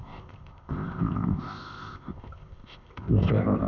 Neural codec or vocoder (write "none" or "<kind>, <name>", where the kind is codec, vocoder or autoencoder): codec, ZipCodec